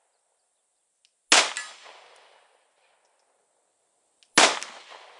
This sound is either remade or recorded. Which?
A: recorded